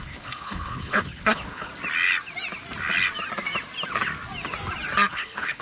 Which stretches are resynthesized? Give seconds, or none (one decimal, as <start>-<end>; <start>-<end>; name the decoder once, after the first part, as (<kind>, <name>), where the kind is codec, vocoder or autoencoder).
0.0-1.7 (codec, HILCodec); 5.1-5.6